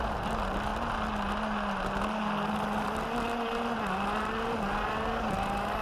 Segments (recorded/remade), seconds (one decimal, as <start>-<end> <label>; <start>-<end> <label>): 0.0-5.8 recorded